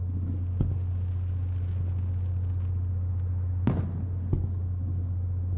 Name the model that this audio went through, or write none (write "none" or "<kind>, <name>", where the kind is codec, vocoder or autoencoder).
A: none